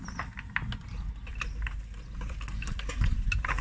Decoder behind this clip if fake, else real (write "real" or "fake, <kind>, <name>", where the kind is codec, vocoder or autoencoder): real